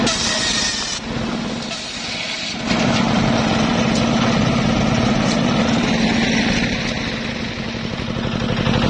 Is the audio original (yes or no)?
yes